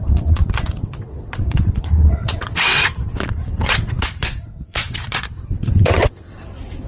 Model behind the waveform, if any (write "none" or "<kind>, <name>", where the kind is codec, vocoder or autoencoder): vocoder, WaveNeXt